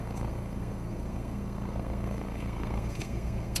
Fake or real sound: fake